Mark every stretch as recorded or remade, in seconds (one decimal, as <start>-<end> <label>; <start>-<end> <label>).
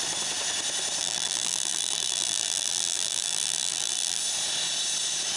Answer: 0.0-1.0 recorded; 1.0-4.2 remade; 4.2-5.4 recorded